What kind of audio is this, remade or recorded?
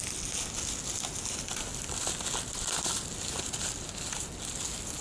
recorded